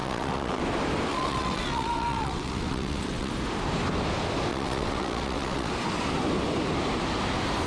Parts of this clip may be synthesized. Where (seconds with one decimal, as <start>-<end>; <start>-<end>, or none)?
0.0-0.6; 1.1-3.3; 4.5-5.7